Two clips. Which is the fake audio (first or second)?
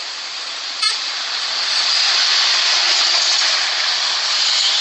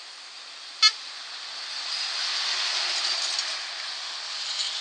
first